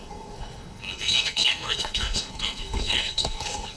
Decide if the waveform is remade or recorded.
remade